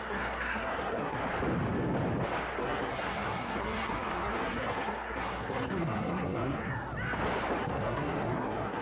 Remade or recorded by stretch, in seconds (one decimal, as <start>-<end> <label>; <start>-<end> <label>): 0.0-1.2 remade; 1.2-2.6 recorded; 2.6-6.9 remade; 6.9-7.6 recorded; 7.6-8.8 remade